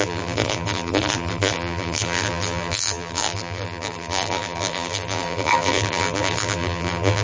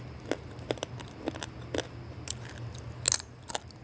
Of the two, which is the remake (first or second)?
first